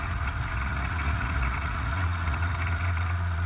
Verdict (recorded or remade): remade